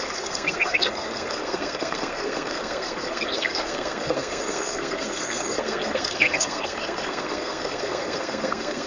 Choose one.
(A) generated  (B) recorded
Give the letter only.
A